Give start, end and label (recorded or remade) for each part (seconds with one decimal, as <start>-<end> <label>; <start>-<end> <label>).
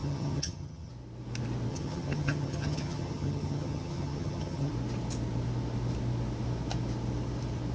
0.0-0.9 remade; 0.9-1.7 recorded; 1.7-4.7 remade; 4.7-7.7 recorded